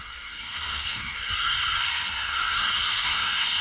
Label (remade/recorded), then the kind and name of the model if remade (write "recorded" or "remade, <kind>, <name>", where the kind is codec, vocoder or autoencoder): remade, codec, SNAC